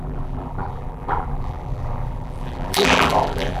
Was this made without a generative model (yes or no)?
no